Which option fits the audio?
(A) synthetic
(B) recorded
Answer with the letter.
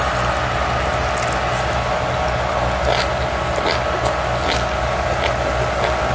B